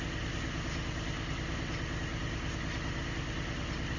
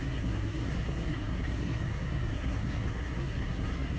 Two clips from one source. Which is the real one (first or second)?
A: first